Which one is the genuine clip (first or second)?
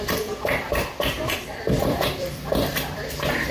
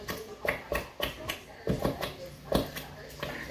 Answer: second